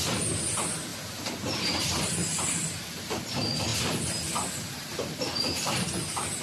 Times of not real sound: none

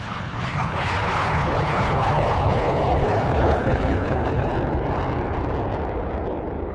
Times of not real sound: 0.0-4.5 (codec, HILCodec)